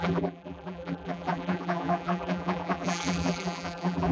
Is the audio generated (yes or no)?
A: yes